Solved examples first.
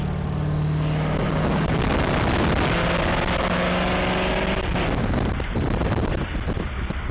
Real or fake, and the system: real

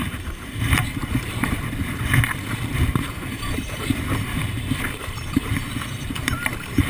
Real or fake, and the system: fake, vocoder, BigVGAN v2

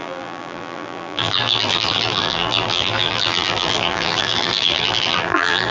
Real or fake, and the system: fake, vocoder, BigVGAN v2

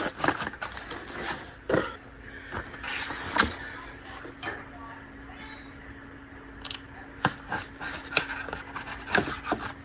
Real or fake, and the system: real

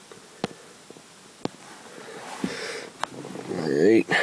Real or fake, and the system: real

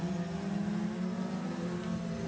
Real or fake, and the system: real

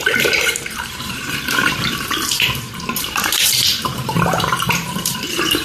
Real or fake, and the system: fake, vocoder, BigVGAN v2